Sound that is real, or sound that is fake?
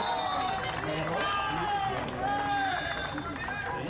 real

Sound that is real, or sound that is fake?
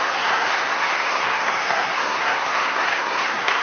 fake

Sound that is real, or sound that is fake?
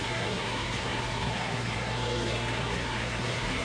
fake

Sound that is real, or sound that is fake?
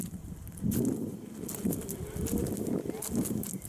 real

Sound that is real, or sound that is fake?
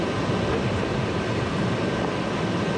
real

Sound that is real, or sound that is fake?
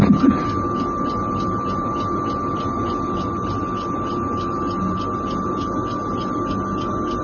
real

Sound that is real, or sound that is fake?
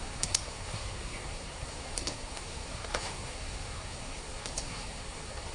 fake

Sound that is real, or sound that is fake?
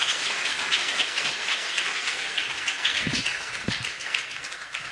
fake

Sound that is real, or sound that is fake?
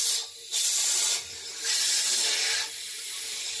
real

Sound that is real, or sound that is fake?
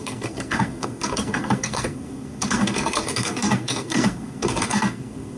fake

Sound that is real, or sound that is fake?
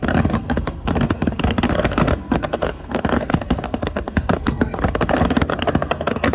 fake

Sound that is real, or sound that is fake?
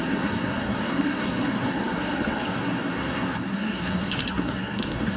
fake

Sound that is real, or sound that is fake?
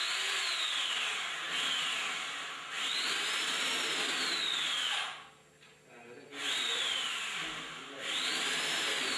real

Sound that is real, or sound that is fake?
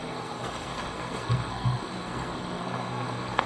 fake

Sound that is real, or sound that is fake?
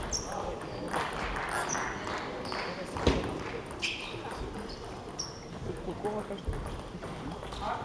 real